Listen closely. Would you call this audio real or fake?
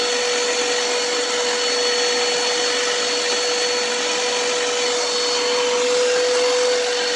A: real